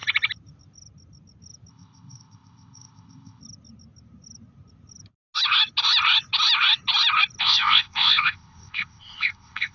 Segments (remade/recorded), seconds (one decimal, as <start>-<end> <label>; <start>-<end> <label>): 0.0-1.7 recorded; 1.7-3.4 remade; 3.4-7.4 recorded; 7.4-9.7 remade